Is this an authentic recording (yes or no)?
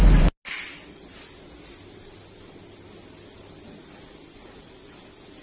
yes